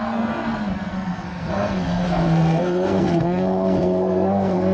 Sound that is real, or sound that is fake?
fake